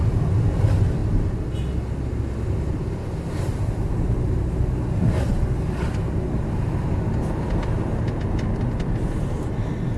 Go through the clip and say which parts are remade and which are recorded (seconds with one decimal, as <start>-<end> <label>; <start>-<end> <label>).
0.0-10.0 recorded